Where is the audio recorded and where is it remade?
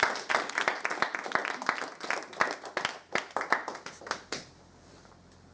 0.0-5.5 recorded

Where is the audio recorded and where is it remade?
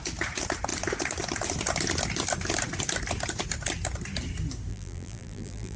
0.0-4.7 recorded; 4.7-5.8 remade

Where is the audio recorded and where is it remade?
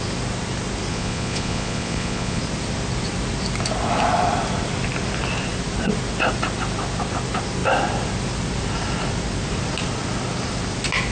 0.0-0.9 recorded; 0.9-2.4 remade; 2.4-11.1 recorded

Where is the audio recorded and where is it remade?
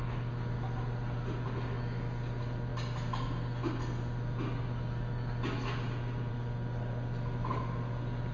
0.0-8.3 recorded